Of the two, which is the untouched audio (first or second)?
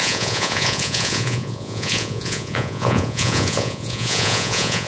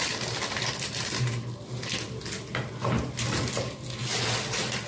second